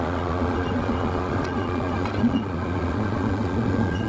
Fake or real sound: fake